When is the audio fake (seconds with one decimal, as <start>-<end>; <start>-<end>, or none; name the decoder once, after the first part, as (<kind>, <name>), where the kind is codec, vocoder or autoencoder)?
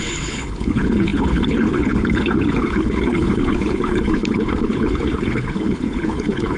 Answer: 0.0-6.6 (codec, HILCodec)